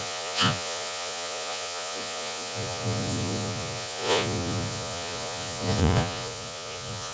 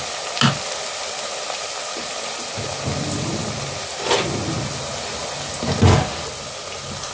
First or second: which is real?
second